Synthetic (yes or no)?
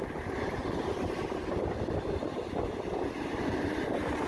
no